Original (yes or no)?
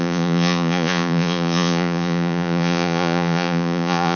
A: no